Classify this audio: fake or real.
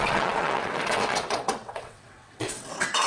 fake